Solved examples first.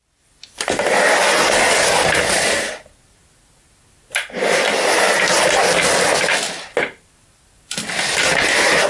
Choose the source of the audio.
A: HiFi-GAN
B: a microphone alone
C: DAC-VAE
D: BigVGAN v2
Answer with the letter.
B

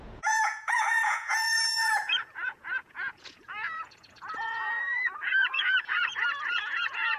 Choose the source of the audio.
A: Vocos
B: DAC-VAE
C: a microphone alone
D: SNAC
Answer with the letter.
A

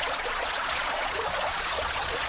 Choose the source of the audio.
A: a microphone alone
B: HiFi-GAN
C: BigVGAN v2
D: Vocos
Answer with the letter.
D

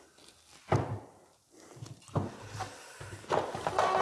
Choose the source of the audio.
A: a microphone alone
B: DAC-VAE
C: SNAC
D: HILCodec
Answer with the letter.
A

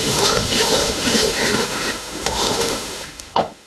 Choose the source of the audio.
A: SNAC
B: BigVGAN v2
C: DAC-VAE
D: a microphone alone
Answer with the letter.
C